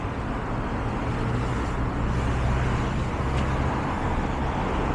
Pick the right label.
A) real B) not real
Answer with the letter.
A